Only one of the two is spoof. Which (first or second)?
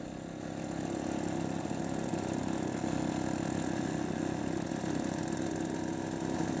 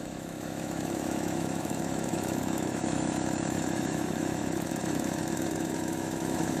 second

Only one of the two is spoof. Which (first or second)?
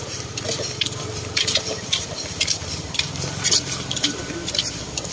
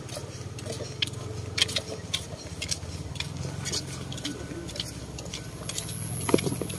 first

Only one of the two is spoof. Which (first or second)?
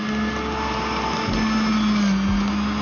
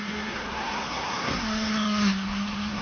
second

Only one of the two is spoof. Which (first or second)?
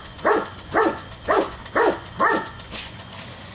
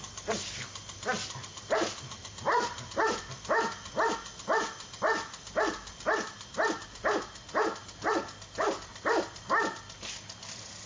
first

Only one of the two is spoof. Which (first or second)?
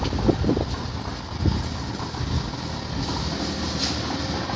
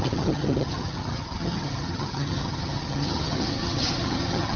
second